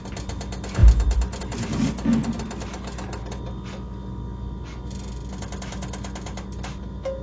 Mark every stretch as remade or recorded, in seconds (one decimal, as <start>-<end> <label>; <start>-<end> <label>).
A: 0.0-7.2 recorded